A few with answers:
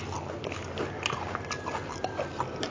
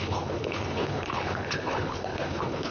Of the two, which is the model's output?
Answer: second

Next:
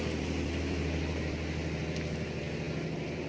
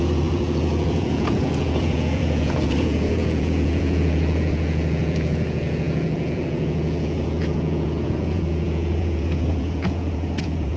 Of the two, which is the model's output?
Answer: second